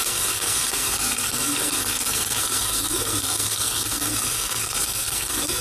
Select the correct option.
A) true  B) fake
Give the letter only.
B